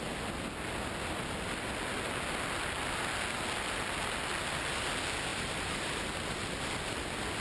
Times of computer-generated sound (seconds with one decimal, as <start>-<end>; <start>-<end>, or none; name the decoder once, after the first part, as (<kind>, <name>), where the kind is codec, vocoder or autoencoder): 5.3-6.0 (vocoder, BigVGAN v2)